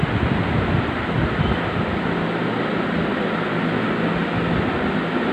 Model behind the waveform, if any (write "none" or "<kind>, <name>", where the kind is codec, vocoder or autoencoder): none